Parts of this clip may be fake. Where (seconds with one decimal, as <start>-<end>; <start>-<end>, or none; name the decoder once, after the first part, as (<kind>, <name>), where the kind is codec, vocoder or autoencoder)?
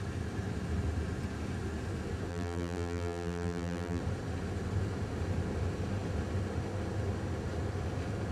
2.3-4.0 (vocoder, BigVGAN v2)